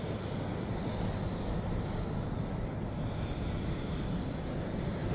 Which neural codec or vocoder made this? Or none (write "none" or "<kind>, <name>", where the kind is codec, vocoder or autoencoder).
none